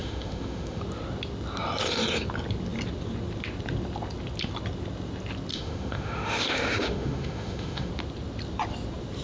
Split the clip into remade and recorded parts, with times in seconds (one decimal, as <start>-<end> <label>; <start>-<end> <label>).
0.0-0.8 remade; 0.8-5.5 recorded; 5.5-7.9 remade; 7.9-9.2 recorded